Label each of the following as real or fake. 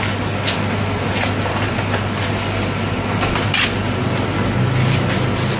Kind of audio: real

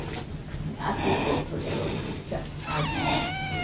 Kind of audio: real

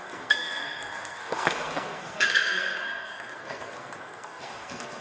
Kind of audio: fake